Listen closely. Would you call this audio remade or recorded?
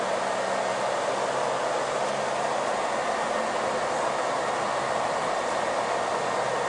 recorded